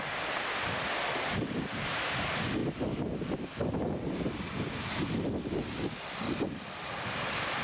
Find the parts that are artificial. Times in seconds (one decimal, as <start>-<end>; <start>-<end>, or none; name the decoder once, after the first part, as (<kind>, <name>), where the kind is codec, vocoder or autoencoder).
2.6-4.1 (vocoder, BigVGAN v2)